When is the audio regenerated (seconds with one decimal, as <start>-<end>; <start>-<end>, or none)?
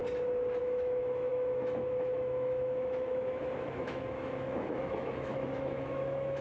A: 0.6-6.4